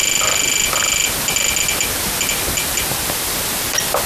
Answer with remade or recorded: recorded